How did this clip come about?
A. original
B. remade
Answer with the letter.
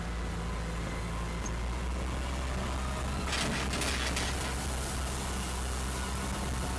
A